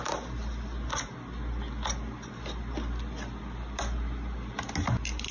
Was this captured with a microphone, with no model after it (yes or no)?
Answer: yes